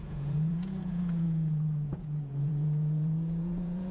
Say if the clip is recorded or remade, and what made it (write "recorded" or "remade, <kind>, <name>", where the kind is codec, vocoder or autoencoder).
remade, vocoder, Vocos